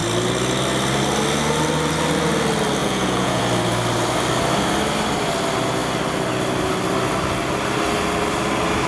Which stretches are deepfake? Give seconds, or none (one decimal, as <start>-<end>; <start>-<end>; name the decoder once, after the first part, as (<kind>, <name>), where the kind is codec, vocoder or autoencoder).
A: 2.8-3.4 (vocoder, Vocos)